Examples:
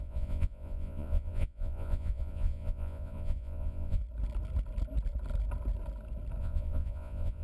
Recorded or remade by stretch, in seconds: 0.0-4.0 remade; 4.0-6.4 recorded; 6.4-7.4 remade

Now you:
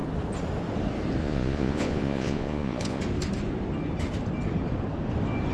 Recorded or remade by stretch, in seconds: 0.0-1.2 recorded; 1.2-3.0 remade; 3.0-5.5 recorded

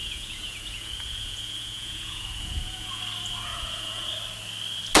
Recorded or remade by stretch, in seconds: 0.0-3.0 remade; 3.0-3.5 recorded; 3.5-4.1 remade; 4.1-5.0 recorded

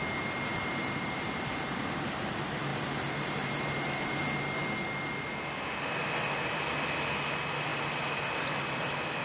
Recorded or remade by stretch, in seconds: 0.0-0.5 recorded; 0.5-1.4 remade; 1.4-2.7 recorded; 2.7-4.2 remade; 4.2-9.2 recorded

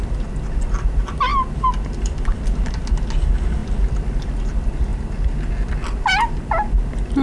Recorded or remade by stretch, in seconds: 0.0-1.3 recorded; 1.3-2.9 remade; 2.9-3.6 recorded; 3.6-4.3 remade; 4.3-7.2 recorded